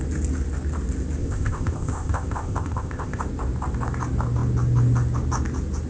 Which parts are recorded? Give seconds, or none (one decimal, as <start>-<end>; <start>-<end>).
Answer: 0.0-1.2; 3.2-5.9

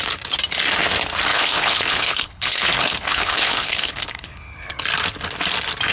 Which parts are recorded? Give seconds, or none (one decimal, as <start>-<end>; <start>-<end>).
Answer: 0.0-1.3; 4.8-5.9